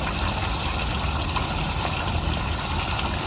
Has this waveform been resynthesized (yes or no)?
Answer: no